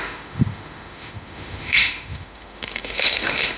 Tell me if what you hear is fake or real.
fake